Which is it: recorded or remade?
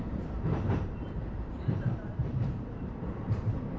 remade